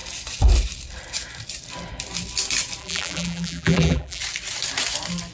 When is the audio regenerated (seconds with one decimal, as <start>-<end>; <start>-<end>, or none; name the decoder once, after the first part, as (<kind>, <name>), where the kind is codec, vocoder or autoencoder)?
2.8-4.2 (vocoder, BigVGAN v2)